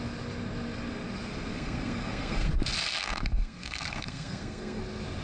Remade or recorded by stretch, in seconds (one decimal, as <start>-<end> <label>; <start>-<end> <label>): 0.0-1.5 recorded; 1.5-2.5 remade; 2.5-2.9 recorded; 2.9-4.8 remade; 4.8-5.2 recorded

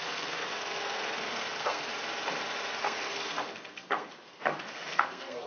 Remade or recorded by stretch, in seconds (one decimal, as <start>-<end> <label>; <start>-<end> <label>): 0.0-1.9 remade; 1.9-2.8 recorded; 2.8-5.5 remade

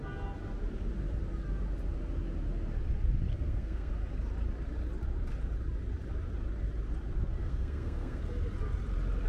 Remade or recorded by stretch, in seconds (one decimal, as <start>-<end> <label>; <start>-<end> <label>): 0.0-3.3 recorded; 3.3-3.9 remade; 3.9-7.4 recorded; 7.4-8.2 remade; 8.2-9.3 recorded

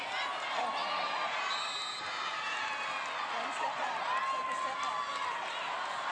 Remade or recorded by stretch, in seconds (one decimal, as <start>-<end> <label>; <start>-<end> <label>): 0.0-6.1 recorded

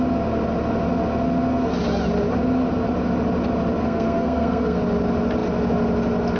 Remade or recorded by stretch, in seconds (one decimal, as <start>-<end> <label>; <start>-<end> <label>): 0.0-3.8 recorded; 3.8-4.8 remade; 4.8-6.4 recorded

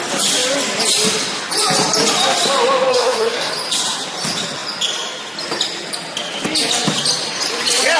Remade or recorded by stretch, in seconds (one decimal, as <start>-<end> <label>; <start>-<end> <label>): 0.0-2.9 recorded; 2.9-3.5 remade; 3.5-8.0 recorded

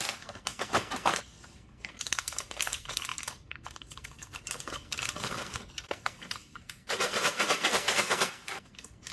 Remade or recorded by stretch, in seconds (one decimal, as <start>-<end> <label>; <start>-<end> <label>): 0.0-9.1 remade